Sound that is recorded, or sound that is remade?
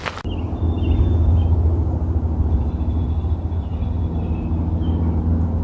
recorded